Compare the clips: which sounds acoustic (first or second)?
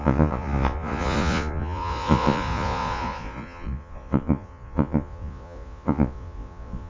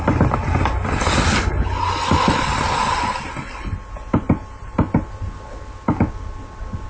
second